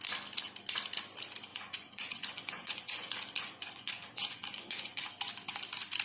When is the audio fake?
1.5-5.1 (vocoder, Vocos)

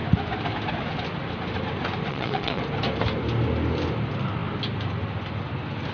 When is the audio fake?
2.1-2.6 (vocoder, Vocos)

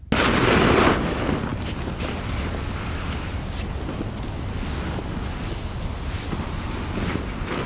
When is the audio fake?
none

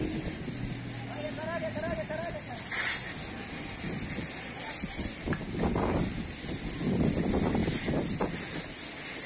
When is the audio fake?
none

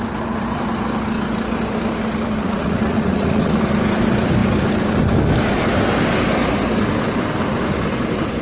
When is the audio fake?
2.4-3.6 (vocoder, Vocos)

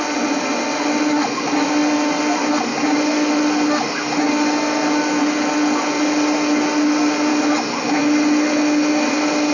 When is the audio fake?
none